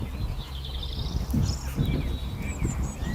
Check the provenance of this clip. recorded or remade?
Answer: recorded